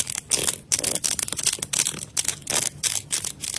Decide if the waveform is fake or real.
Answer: real